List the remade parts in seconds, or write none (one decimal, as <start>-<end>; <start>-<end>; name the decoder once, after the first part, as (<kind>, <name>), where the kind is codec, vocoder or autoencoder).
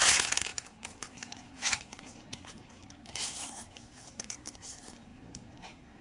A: 0.0-6.0 (codec, SNAC)